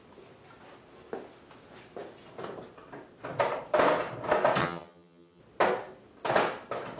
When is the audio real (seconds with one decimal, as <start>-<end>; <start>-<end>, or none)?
0.0-4.6; 5.4-7.0